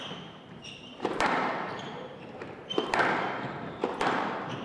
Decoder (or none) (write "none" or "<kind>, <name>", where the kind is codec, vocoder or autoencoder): vocoder, BigVGAN v2